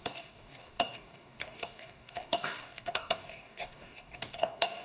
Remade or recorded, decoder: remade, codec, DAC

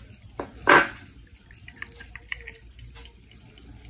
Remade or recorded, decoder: recorded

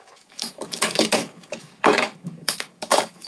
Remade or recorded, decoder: remade, codec, DAC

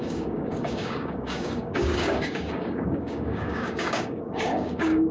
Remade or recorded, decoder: remade, codec, DAC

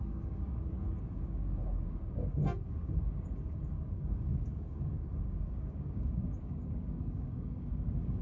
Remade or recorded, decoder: remade, codec, DAC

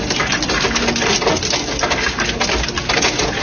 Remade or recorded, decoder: recorded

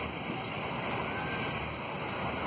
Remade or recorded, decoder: recorded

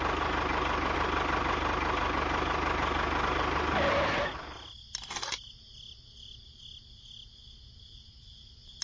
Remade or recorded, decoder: recorded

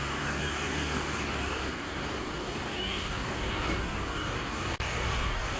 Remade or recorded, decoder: remade, codec, DAC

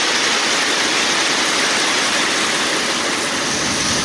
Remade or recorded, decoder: recorded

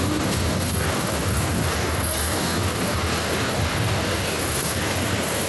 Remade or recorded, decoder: remade, codec, DAC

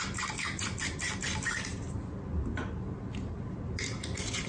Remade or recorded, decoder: recorded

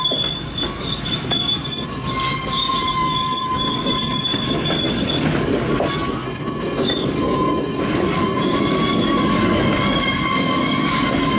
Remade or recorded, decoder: remade, codec, DAC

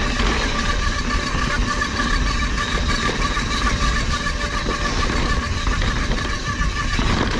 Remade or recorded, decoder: recorded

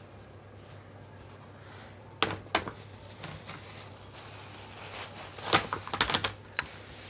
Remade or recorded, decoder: recorded